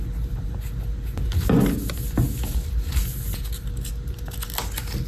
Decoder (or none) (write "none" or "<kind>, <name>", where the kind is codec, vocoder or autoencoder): none